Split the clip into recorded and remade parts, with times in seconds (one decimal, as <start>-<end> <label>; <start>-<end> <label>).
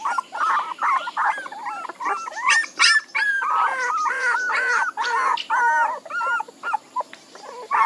0.0-7.9 recorded